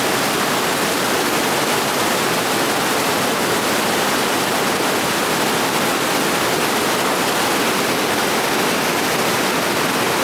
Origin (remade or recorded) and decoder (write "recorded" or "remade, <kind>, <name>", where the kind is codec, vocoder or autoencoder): recorded